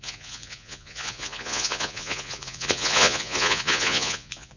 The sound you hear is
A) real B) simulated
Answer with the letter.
B